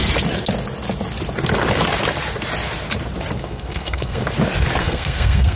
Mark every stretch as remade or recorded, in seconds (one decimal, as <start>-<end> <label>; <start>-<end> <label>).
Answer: 0.0-3.4 recorded; 3.4-4.2 remade; 4.2-4.8 recorded; 4.8-5.6 remade